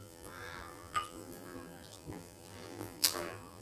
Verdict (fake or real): fake